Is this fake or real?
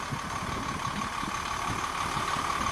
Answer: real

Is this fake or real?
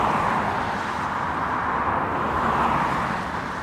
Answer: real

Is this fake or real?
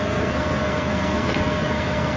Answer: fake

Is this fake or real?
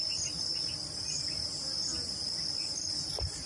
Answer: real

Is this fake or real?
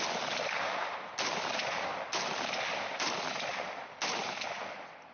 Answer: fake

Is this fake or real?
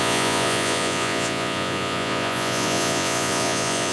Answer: fake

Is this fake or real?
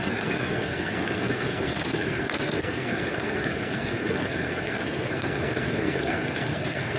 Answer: fake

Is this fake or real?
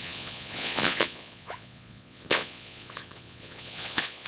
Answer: fake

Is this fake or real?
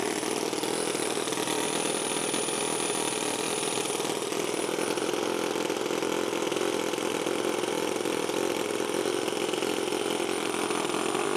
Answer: real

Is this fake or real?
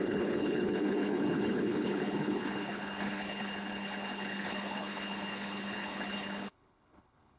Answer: fake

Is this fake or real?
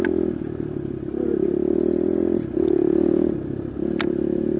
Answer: real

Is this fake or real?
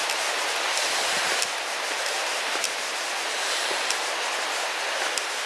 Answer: real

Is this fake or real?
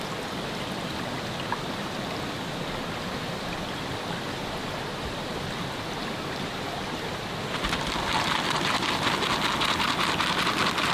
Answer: real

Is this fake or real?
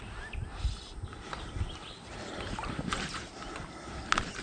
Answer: real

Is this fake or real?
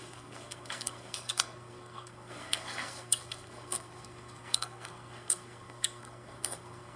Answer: fake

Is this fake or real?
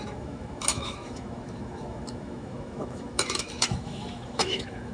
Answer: fake